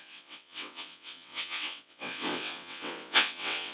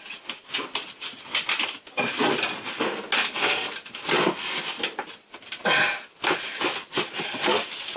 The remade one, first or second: first